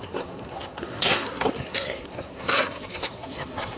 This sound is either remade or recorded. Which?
remade